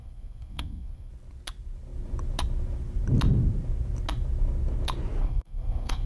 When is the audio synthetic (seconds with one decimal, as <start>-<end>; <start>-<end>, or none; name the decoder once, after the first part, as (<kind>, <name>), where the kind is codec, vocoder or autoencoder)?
0.0-1.1 (codec, SNAC); 5.2-6.1